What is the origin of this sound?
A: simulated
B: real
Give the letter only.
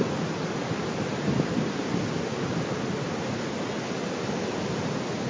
B